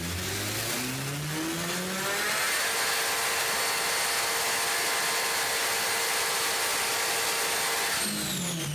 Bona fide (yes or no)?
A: yes